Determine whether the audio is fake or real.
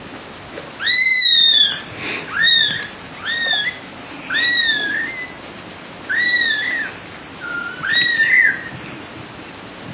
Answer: real